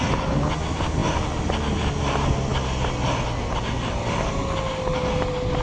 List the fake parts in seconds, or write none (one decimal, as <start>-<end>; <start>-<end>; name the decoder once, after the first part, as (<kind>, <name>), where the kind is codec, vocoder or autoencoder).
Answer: none